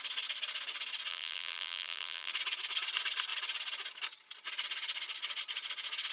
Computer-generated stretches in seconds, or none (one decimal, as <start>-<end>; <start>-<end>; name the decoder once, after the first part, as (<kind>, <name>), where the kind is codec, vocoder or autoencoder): 1.1-2.3 (vocoder, BigVGAN v2)